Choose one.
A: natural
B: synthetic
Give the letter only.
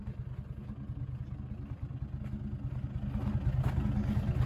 A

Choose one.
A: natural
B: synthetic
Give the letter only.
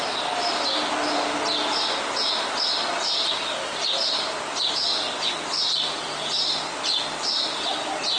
A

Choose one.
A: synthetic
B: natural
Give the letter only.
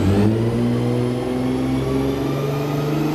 B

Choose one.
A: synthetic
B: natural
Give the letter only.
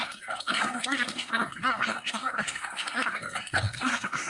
A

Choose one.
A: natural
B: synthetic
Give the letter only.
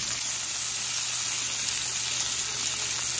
A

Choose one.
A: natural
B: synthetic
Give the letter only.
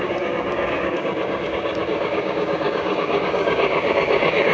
B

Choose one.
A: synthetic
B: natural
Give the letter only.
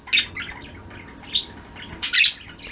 B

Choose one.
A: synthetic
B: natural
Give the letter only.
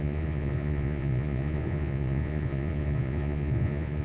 A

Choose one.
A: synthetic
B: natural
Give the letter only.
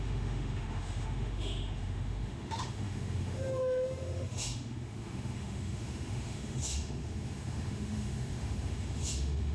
A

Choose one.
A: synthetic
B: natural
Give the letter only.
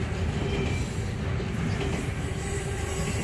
B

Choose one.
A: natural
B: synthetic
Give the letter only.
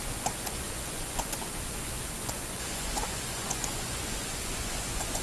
B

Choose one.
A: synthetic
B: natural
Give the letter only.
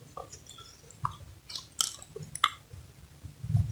B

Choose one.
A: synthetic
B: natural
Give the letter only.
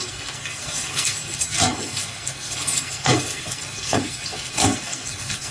A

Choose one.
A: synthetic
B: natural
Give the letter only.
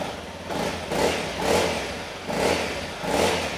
B